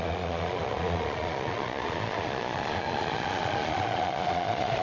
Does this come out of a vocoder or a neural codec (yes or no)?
yes